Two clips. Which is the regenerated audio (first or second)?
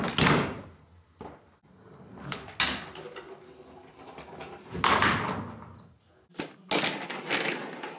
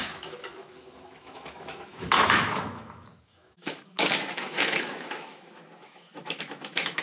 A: second